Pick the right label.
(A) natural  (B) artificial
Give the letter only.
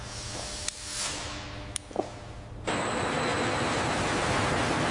A